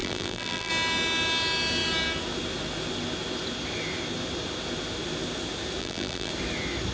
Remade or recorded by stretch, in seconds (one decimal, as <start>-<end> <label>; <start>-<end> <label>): 0.0-0.7 remade; 0.7-5.8 recorded; 5.8-6.3 remade; 6.3-6.9 recorded